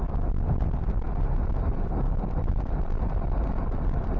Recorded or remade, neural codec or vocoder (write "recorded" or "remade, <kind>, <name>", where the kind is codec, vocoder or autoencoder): recorded